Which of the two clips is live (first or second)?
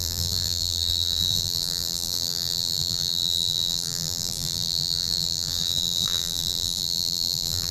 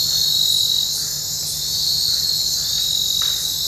second